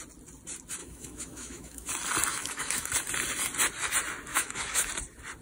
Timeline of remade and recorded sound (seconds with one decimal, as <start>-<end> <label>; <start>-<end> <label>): 0.0-0.8 recorded; 0.8-1.9 remade; 1.9-2.3 recorded; 2.3-2.9 remade; 2.9-4.3 recorded; 4.3-4.9 remade; 4.9-5.4 recorded